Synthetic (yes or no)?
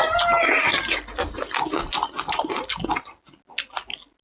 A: no